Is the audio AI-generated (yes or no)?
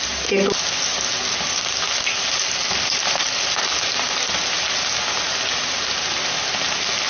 no